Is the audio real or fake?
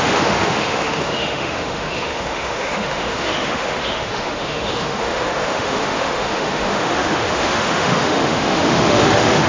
fake